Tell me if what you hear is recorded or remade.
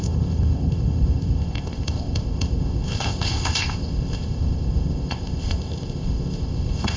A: remade